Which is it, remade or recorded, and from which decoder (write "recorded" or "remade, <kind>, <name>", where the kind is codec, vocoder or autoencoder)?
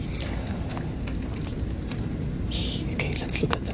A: recorded